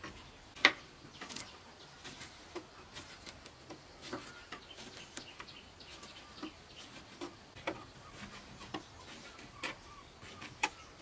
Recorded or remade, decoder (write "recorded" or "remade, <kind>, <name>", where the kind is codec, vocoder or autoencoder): recorded